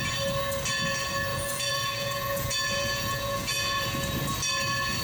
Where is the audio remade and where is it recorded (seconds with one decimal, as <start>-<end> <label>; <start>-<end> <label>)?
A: 0.0-1.3 recorded; 1.3-3.8 remade; 3.8-5.0 recorded